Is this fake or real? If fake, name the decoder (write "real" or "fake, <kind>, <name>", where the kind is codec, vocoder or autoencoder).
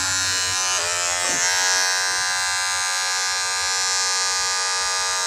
real